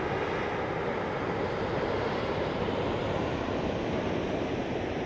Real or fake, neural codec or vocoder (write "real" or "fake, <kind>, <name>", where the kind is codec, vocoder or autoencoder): real